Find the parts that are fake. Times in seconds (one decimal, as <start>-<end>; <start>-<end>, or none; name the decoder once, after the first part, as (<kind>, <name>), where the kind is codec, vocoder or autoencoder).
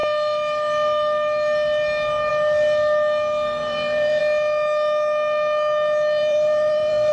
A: 3.6-4.2 (vocoder, BigVGAN v2); 6.2-7.1